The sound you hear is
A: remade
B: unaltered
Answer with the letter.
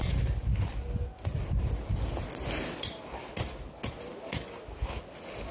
B